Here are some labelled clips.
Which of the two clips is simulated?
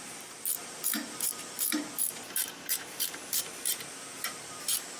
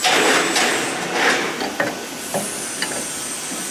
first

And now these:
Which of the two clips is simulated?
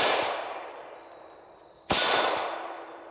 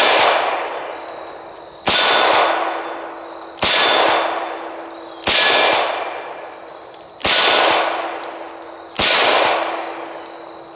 first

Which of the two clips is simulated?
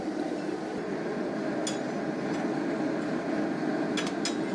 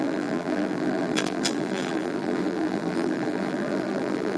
second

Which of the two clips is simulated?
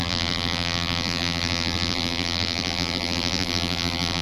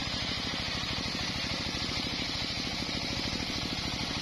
first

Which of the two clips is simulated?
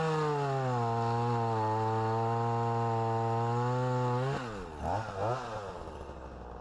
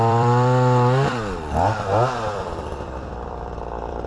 second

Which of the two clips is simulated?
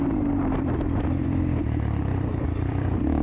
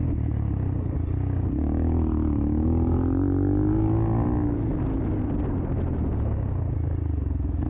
first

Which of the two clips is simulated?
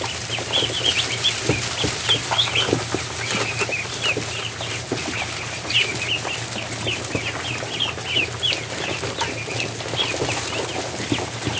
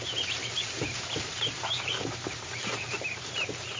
second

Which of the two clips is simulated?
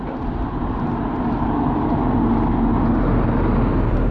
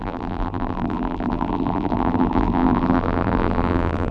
second